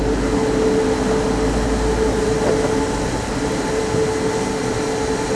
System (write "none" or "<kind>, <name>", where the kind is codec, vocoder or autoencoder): none